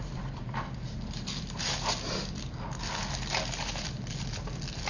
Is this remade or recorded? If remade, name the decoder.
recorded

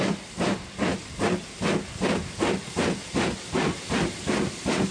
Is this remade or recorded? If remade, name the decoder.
recorded